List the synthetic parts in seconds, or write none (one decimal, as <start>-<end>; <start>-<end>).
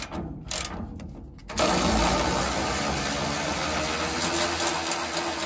none